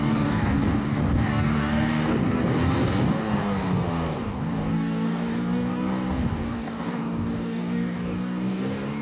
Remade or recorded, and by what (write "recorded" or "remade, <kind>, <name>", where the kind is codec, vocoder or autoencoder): remade, codec, DAC